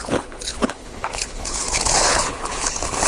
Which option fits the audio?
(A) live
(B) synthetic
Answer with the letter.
B